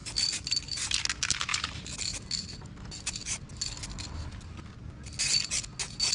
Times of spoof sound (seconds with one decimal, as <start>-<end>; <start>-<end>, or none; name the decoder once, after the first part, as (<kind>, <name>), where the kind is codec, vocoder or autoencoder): 0.0-1.0 (vocoder, BigVGAN v2)

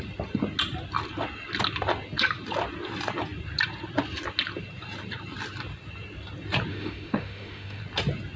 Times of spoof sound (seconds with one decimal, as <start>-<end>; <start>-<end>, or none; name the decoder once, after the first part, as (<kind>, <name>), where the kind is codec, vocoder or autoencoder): 6.7-7.8 (autoencoder, DAC-VAE)

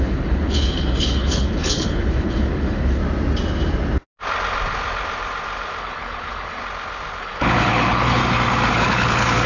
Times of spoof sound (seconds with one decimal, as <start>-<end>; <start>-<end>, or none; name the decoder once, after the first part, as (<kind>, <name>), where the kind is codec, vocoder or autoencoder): 0.0-3.0 (codec, HILCodec); 5.8-6.6; 7.2-8.2; 8.7-9.5

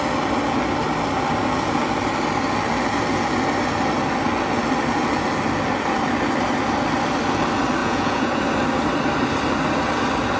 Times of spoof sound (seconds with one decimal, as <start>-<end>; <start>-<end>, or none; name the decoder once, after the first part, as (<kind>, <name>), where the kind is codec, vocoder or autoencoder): 7.8-8.4 (vocoder, Vocos)

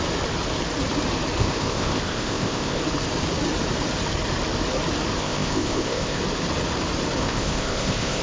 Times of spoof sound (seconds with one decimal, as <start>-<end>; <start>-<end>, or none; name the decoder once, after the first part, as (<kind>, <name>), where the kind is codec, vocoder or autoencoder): 1.4-2.8 (codec, ZipCodec); 5.2-6.2; 7.2-8.2

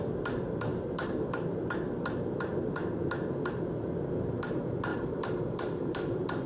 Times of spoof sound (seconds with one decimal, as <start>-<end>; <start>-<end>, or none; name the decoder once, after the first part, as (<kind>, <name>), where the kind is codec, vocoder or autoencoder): 0.7-1.3 (vocoder, BigVGAN v2); 4.9-6.5

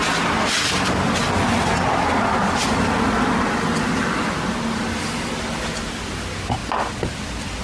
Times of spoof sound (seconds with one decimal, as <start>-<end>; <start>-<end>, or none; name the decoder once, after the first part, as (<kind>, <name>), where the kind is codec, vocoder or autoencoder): none

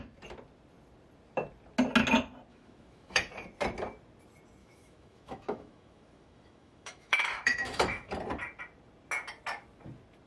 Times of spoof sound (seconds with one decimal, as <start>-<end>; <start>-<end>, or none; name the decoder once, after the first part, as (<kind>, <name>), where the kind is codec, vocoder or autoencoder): 2.5-3.3 (autoencoder, DAC-VAE); 4.6-8.1